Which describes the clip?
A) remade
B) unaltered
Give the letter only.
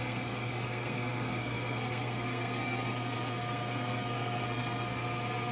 A